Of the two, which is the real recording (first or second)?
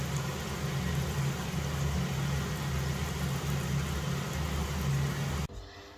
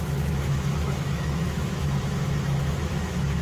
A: first